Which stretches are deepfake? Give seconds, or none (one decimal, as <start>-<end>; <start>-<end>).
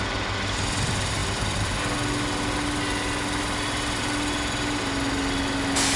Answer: none